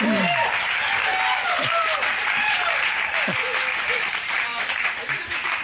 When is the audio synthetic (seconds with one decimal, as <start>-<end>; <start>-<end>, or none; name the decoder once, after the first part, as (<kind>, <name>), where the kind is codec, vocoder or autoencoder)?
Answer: 3.3-4.1 (autoencoder, DAC-VAE); 4.5-5.6

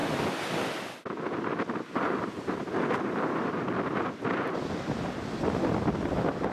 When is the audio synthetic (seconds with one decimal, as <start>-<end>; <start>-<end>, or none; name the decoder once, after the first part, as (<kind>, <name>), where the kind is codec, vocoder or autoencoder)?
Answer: none

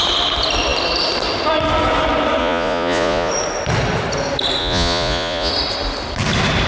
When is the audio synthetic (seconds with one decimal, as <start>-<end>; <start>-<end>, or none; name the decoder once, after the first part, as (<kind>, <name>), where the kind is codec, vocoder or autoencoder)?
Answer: 2.4-3.3 (vocoder, Vocos); 4.6-5.5

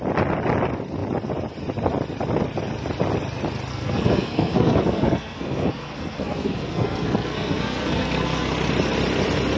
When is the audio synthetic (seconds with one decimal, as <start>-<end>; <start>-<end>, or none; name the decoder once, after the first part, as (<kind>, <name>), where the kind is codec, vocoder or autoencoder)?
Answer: 3.7-8.5 (codec, SNAC)

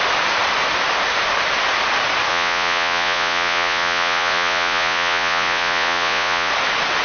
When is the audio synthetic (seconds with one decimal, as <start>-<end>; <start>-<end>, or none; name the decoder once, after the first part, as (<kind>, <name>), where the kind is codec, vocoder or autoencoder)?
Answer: 2.3-6.5 (vocoder, Vocos)

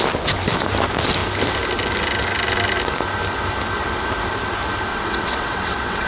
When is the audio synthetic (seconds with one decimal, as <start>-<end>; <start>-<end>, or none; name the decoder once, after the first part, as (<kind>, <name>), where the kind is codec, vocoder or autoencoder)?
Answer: 4.9-6.1 (vocoder, WaveNeXt)

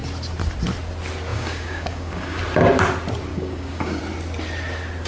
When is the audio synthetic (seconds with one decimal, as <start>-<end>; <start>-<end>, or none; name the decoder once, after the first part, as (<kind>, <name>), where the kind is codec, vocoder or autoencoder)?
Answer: 1.3-2.4 (codec, DAC); 3.3-4.0

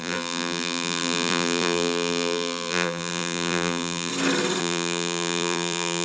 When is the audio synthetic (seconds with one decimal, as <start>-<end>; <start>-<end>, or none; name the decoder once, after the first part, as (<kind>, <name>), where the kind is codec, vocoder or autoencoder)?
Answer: 0.0-4.1 (vocoder, BigVGAN v2); 4.6-6.0